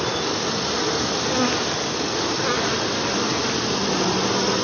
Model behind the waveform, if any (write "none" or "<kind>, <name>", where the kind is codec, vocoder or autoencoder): none